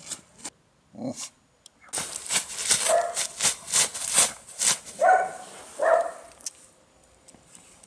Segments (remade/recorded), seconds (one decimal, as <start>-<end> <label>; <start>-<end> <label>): 0.0-7.9 recorded

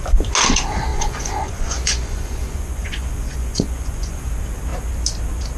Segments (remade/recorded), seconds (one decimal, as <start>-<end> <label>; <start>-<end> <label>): 0.0-0.9 recorded; 0.9-4.3 remade; 4.3-5.6 recorded

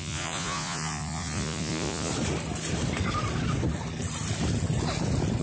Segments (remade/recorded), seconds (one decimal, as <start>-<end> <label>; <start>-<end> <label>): 0.0-2.1 remade; 2.1-5.4 recorded

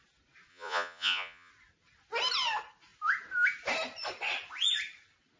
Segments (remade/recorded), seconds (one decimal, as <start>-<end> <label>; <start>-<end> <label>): 0.0-0.5 recorded; 0.5-1.5 remade; 1.5-5.4 recorded

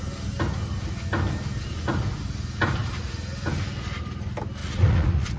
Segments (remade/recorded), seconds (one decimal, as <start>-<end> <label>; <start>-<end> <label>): 0.0-4.6 recorded; 4.6-5.4 remade

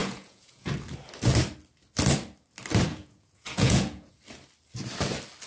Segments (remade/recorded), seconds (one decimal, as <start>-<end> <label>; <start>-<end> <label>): 0.0-0.7 remade; 0.7-2.9 recorded; 2.9-4.1 remade; 4.1-5.5 recorded